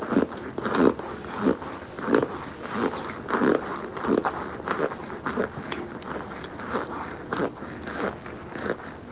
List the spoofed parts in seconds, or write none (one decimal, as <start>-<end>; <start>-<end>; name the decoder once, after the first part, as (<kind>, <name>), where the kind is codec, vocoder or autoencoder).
none